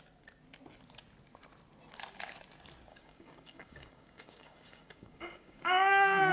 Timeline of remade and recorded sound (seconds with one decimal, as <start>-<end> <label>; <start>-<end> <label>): 0.0-2.9 recorded; 2.9-6.3 remade